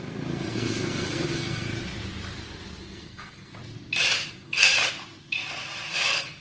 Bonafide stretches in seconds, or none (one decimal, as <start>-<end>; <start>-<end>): 1.7-2.8; 3.5-4.3; 4.7-5.9